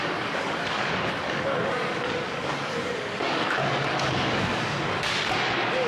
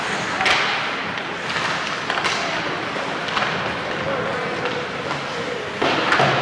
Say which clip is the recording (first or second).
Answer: second